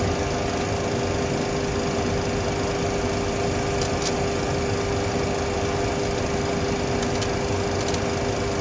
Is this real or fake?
real